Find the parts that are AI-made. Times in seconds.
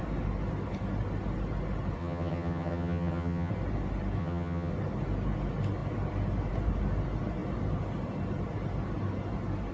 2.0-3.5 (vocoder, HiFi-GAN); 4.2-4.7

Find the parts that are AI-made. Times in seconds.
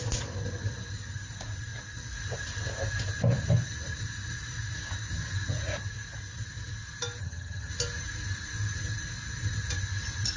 7.2-7.7 (vocoder, HiFi-GAN)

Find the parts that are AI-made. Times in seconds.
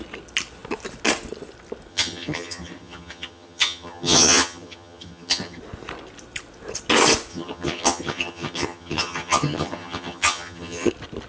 1.9-5.6 (vocoder, HiFi-GAN); 7.3-10.9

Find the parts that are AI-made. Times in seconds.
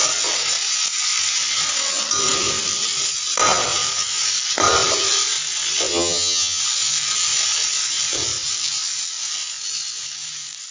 5.9-6.6 (vocoder, HiFi-GAN)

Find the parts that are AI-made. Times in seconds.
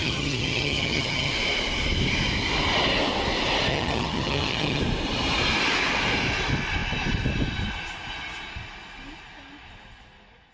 0.0-1.3 (vocoder, HiFi-GAN); 3.7-4.8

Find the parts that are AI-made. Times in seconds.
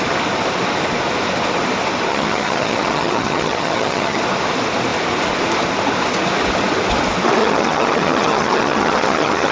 2.1-4.2 (vocoder, HiFi-GAN); 7.4-9.5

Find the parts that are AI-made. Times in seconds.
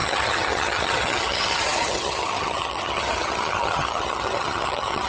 0.0-5.1 (vocoder, HiFi-GAN)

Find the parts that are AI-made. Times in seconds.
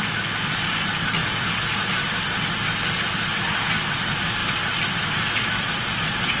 none